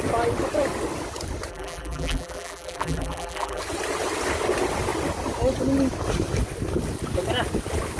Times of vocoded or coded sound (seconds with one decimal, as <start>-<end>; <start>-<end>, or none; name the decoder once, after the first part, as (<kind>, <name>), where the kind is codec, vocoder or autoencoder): 1.5-3.6 (vocoder, BigVGAN v2)